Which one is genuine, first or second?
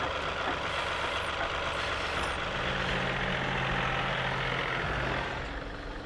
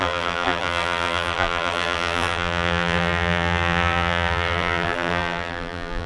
first